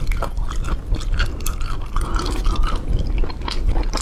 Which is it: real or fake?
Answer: real